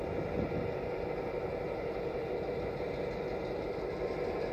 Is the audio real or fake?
real